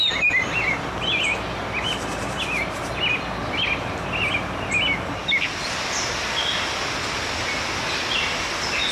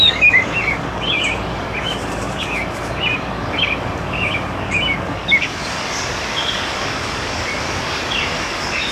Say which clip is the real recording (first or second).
first